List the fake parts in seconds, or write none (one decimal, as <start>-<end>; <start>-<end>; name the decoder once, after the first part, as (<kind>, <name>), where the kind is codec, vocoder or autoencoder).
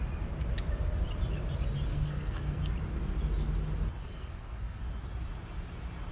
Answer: 1.9-2.6 (codec, SNAC); 4.0-4.8